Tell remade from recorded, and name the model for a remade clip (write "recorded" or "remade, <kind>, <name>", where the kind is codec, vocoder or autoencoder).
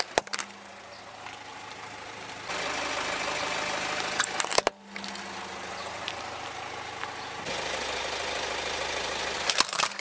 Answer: recorded